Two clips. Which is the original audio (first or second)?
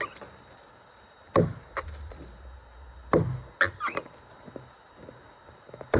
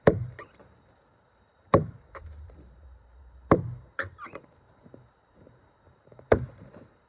first